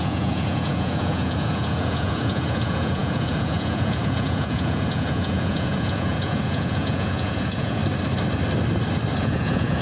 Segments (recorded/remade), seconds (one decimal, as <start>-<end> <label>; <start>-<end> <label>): 0.0-7.8 remade; 7.8-9.2 recorded; 9.2-9.8 remade